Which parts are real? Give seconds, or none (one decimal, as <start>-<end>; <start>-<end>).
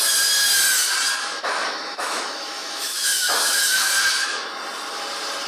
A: 0.0-1.3; 3.9-5.5